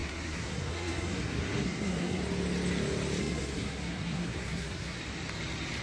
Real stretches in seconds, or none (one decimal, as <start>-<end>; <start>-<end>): 2.2-3.2; 5.0-5.8